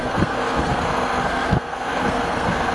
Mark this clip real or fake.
fake